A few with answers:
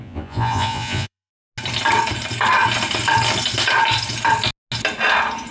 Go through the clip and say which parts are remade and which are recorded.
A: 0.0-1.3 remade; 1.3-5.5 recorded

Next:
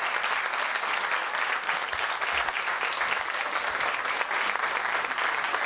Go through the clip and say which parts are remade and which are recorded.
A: 0.0-5.7 recorded

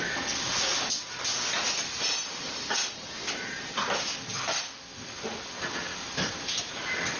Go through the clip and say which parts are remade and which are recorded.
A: 0.0-7.2 recorded

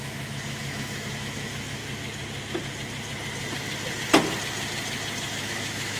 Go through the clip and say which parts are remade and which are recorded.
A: 0.0-1.8 remade; 1.8-5.4 recorded; 5.4-6.0 remade

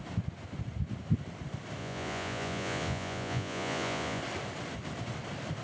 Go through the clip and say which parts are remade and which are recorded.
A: 0.0-1.8 recorded; 1.8-4.2 remade; 4.2-5.6 recorded

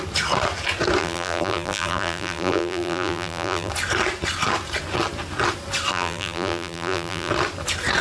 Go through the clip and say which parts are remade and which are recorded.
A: 0.0-1.0 recorded; 1.0-3.7 remade; 3.7-5.9 recorded; 5.9-7.3 remade; 7.3-8.0 recorded